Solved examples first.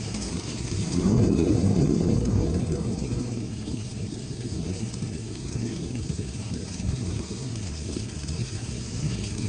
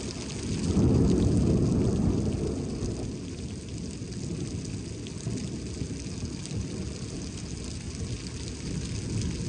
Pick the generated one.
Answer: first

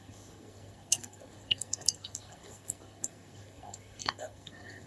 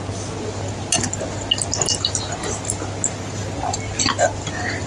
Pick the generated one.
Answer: first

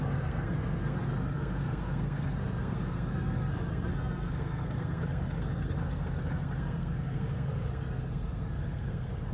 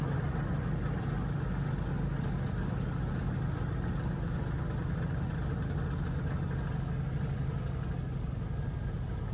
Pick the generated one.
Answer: first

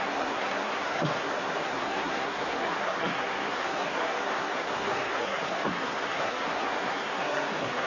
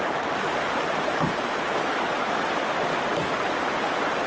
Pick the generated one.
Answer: first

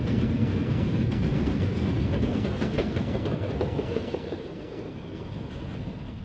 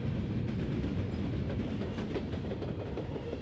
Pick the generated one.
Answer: first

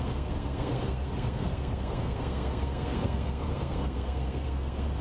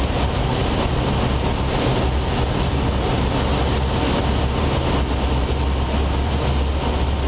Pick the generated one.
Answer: first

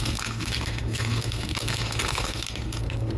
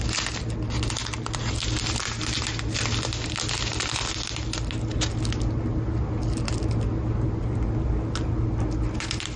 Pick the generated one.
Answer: first